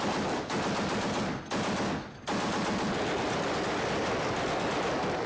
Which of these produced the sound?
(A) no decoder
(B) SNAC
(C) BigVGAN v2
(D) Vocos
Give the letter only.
A